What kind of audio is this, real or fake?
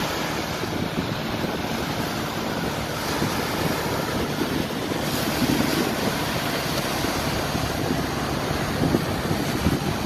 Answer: real